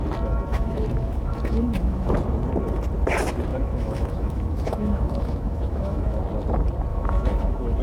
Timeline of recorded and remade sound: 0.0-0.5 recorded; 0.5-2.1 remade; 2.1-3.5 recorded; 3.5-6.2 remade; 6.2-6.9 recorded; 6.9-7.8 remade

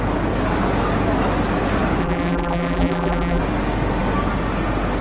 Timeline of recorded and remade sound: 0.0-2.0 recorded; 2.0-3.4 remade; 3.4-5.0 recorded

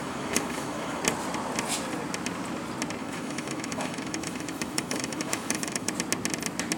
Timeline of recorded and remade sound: 0.0-1.0 remade; 1.0-3.0 recorded; 3.0-5.9 remade; 5.9-6.8 recorded

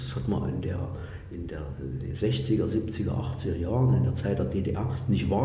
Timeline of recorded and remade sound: 0.0-5.4 recorded